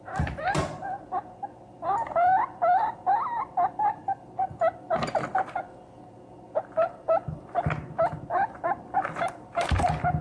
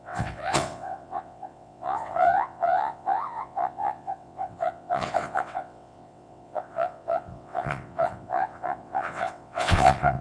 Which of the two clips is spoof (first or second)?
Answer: second